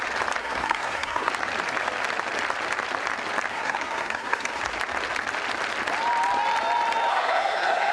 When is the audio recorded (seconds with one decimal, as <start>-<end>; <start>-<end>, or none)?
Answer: 0.0-0.4; 1.3-3.5; 4.6-7.1